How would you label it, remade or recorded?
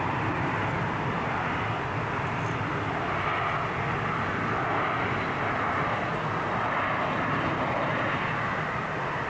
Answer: recorded